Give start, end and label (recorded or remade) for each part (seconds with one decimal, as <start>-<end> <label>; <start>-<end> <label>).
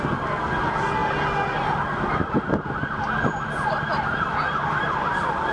0.0-5.5 recorded